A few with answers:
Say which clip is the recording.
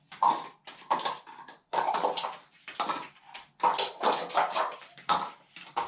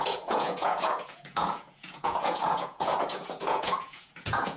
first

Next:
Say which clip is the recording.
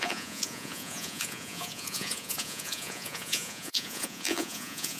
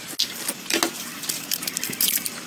second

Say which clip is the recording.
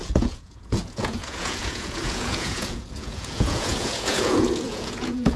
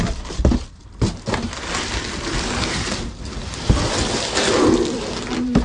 second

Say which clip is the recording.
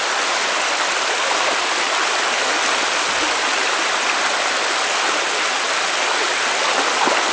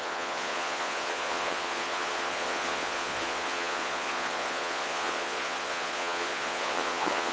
first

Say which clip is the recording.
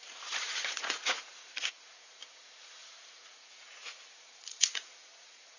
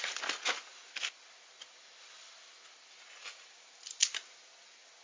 second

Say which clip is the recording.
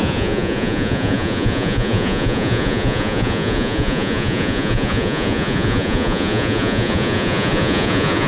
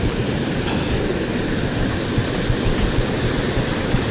second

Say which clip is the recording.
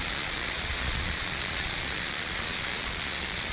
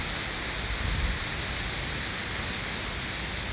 second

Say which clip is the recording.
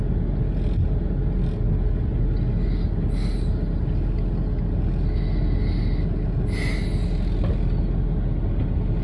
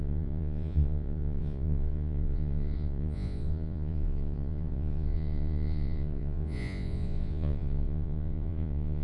first